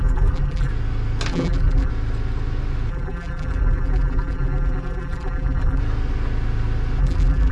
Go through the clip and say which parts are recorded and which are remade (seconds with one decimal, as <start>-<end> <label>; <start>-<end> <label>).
0.0-0.7 remade; 0.7-1.3 recorded; 1.3-1.9 remade; 1.9-2.9 recorded; 2.9-5.8 remade; 5.8-7.0 recorded; 7.0-7.5 remade